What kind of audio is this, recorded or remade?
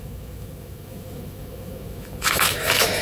remade